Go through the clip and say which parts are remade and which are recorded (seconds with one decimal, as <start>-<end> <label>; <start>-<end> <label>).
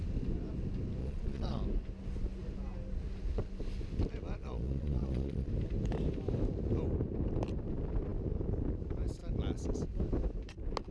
0.0-1.0 recorded; 1.0-1.6 remade; 1.6-4.4 recorded; 4.4-5.5 remade; 5.5-10.9 recorded